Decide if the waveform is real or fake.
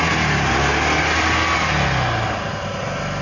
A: real